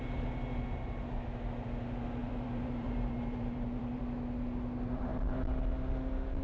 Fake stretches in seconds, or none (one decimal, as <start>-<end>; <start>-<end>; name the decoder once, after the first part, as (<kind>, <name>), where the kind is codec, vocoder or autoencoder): 2.2-4.0 (vocoder, BigVGAN v2)